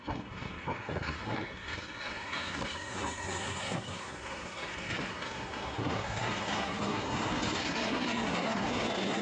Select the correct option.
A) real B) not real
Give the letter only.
B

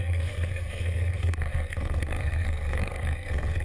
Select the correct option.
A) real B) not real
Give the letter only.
B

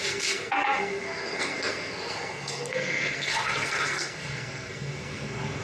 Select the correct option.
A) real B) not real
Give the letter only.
B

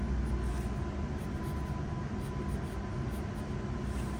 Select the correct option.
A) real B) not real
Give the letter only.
A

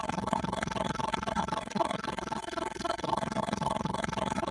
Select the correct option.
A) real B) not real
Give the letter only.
B